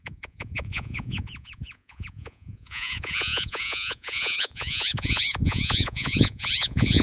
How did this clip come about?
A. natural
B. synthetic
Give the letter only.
B